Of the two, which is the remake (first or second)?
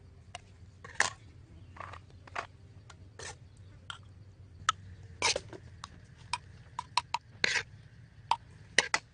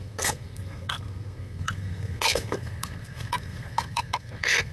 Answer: second